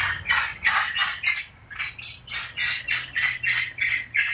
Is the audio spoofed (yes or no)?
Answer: no